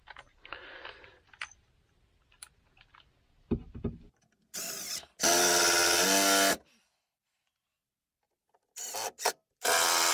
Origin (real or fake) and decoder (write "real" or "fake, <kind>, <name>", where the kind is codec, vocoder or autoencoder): real